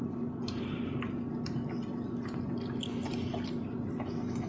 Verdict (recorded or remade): recorded